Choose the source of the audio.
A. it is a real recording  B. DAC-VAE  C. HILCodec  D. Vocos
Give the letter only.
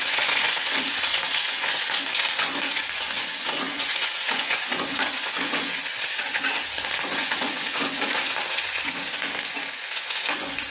D